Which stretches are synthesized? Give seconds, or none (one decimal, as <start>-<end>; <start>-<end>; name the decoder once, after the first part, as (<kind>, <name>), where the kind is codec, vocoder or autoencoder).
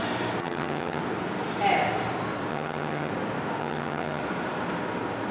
0.4-1.0 (vocoder, HiFi-GAN); 2.5-3.1; 3.6-4.2